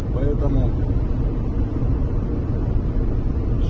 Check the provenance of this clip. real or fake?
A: real